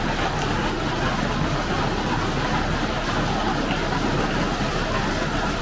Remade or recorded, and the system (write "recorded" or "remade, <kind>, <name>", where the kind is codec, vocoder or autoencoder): recorded